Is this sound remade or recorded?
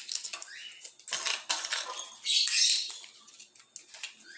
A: recorded